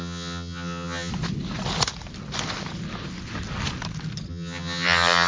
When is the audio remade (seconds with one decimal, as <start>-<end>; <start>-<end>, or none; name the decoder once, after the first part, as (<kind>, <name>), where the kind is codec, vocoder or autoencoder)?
0.0-1.1 (vocoder, HiFi-GAN); 4.3-5.3